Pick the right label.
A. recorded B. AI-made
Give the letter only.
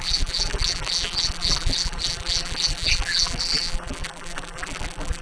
B